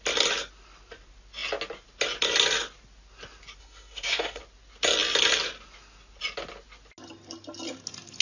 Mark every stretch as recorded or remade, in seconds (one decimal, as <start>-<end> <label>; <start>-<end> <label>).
0.0-3.6 recorded; 3.6-4.4 remade; 4.4-8.2 recorded